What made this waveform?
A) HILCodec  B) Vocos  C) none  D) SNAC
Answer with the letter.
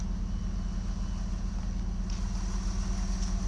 C